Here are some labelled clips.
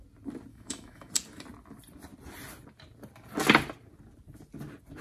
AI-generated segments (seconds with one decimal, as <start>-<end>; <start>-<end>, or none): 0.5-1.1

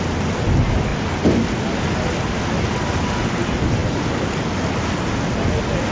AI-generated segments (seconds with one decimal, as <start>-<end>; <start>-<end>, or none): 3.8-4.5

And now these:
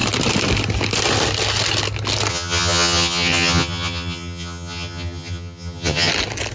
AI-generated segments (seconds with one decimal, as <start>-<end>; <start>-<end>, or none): 2.3-6.1

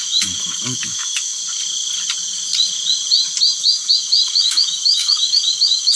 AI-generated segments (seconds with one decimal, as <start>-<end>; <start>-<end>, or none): 0.0-1.4; 3.6-6.0

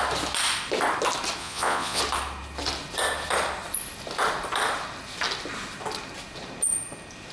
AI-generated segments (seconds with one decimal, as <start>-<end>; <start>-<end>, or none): 1.4-2.0

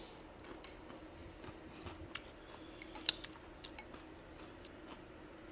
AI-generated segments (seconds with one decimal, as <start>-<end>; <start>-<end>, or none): none